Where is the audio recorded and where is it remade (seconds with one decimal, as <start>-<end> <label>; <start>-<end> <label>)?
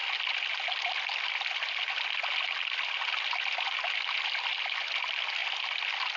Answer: 0.0-6.2 recorded